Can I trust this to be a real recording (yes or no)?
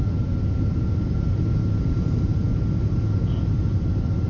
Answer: yes